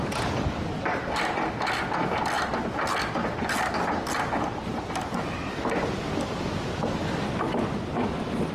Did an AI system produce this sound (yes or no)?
no